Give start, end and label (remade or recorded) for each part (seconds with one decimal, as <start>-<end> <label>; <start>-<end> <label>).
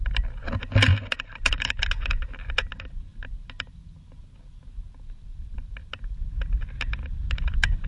0.0-0.9 recorded; 0.9-1.8 remade; 1.8-7.9 recorded